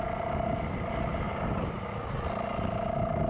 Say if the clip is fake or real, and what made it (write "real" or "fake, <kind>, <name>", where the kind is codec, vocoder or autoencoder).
real